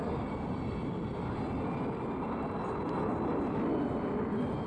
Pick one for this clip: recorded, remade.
recorded